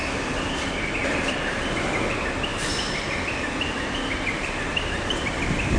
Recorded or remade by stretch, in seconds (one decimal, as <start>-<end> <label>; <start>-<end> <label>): 0.0-0.6 remade; 0.6-1.0 recorded; 1.0-1.7 remade; 1.7-2.5 recorded; 2.5-5.8 remade